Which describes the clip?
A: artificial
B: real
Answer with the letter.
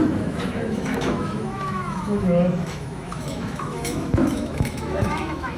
A